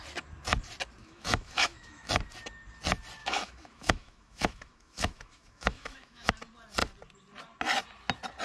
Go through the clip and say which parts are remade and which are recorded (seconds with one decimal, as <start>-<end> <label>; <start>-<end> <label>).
0.0-1.0 recorded; 1.0-2.1 remade; 2.1-3.2 recorded; 3.2-6.3 remade; 6.3-8.4 recorded